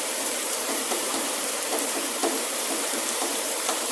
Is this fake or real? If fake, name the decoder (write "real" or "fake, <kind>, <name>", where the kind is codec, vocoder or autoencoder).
fake, vocoder, BigVGAN v2